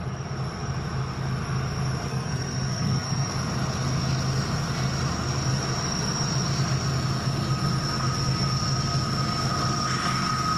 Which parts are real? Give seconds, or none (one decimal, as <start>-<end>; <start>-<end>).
0.0-2.1; 3.3-10.6